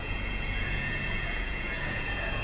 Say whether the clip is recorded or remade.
remade